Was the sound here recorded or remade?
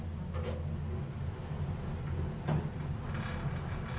recorded